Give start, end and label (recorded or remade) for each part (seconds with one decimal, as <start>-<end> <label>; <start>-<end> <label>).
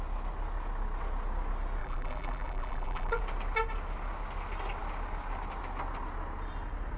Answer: 0.0-1.8 recorded; 1.8-3.2 remade; 3.2-7.0 recorded